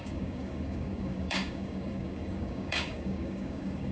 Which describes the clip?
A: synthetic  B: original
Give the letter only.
A